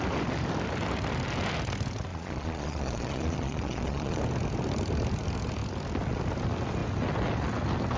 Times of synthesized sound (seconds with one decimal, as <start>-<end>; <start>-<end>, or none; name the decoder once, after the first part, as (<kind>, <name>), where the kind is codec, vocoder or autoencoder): 2.1-4.2 (vocoder, Vocos)